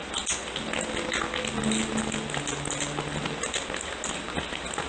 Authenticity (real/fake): real